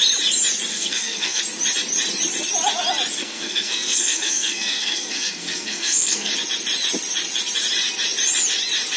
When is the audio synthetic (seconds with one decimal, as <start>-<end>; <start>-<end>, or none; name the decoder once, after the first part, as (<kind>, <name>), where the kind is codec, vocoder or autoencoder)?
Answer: 0.7-1.4 (codec, SNAC); 3.2-6.3